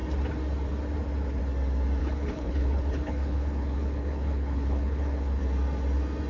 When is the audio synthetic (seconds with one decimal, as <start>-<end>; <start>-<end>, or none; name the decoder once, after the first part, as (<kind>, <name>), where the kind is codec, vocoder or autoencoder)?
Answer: 2.0-5.4 (codec, HILCodec)